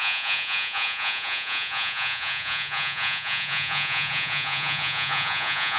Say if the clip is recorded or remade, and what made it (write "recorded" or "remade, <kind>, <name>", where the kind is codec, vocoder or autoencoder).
remade, vocoder, Vocos